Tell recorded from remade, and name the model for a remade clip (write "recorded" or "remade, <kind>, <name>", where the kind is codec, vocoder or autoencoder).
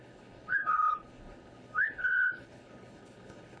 remade, codec, HILCodec